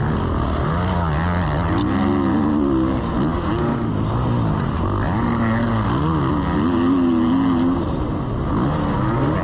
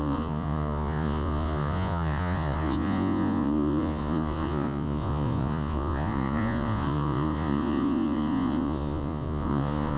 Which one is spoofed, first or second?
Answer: second